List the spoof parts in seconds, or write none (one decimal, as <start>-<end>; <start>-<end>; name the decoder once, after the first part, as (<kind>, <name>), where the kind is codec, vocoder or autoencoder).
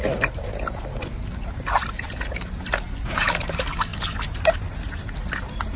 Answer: none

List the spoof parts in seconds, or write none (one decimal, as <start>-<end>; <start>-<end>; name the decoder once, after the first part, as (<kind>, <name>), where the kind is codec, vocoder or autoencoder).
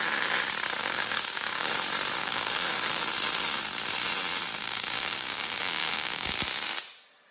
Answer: 0.8-1.7 (codec, DAC); 2.2-3.0; 4.6-6.3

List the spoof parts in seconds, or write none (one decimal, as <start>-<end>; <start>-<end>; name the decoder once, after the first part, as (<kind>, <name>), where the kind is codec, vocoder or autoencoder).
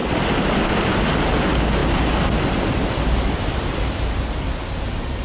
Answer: none